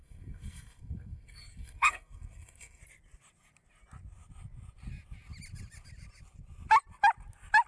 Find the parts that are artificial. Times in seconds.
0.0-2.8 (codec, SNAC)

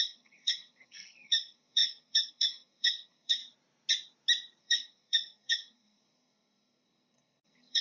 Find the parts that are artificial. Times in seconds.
0.0-3.4 (codec, SNAC); 4.6-7.8